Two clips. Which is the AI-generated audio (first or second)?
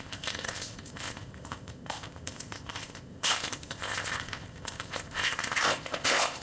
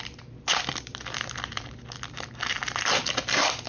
first